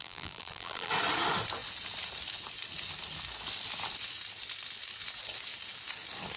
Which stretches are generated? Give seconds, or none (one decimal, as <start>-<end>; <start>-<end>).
0.0-0.9